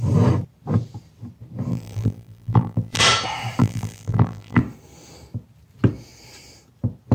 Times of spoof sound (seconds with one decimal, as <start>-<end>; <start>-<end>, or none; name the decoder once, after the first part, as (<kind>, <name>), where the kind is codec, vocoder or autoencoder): 1.7-3.0 (vocoder, BigVGAN v2); 3.6-4.6